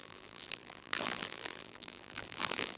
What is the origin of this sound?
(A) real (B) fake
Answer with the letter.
B